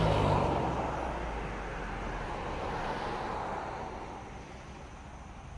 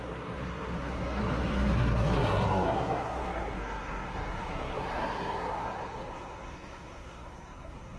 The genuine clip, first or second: first